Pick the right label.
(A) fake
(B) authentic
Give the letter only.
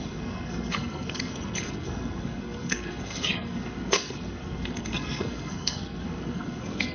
A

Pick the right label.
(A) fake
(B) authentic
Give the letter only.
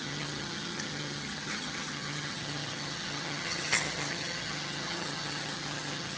A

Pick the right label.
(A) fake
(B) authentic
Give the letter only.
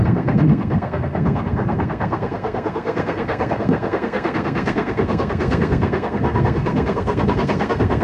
A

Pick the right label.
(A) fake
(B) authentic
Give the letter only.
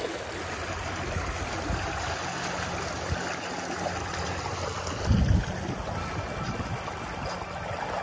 B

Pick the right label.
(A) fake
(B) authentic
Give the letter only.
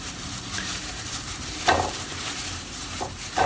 A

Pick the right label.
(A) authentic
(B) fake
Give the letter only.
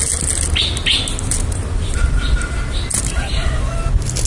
A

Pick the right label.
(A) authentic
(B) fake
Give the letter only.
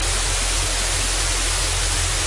A